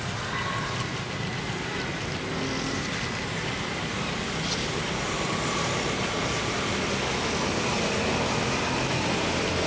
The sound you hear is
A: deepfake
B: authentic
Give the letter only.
B